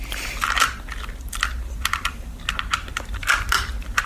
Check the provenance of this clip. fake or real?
real